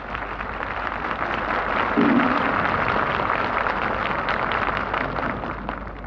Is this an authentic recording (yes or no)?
yes